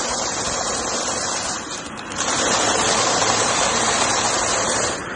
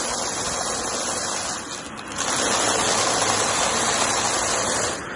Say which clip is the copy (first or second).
first